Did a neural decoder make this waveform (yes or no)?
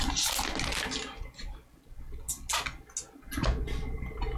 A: no